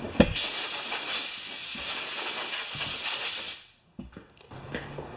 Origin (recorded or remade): recorded